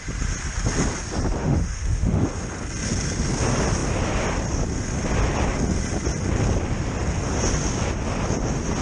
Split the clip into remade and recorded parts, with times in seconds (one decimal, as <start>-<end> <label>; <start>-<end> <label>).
0.0-1.4 recorded; 1.4-2.3 remade; 2.3-8.8 recorded